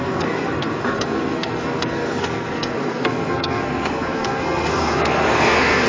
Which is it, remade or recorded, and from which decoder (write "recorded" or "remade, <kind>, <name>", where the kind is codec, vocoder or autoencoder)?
remade, codec, SNAC